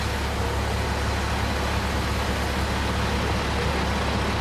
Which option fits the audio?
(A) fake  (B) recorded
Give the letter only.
B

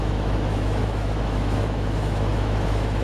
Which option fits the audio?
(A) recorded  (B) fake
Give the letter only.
B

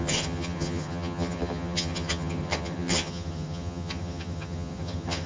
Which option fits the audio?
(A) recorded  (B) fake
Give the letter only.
B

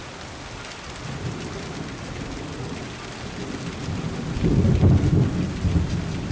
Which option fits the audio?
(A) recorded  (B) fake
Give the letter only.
A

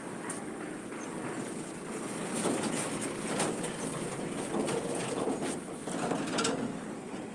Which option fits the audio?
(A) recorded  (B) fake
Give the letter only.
A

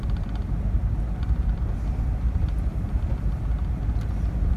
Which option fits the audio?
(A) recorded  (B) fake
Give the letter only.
A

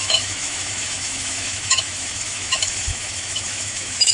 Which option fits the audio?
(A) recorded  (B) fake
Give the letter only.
B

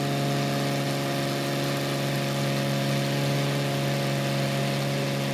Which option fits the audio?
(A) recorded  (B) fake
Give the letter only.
A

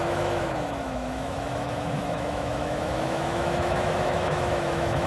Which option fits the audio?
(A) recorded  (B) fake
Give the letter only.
B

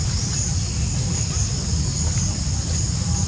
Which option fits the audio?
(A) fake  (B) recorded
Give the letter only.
B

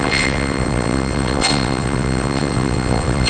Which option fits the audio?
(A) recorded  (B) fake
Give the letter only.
B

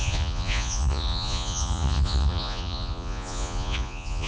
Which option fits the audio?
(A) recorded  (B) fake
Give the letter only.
B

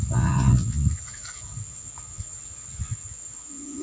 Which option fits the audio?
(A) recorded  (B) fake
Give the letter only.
B